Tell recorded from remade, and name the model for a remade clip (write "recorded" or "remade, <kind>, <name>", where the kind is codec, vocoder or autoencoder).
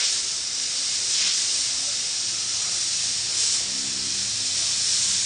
recorded